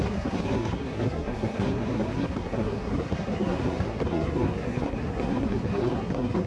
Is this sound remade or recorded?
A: remade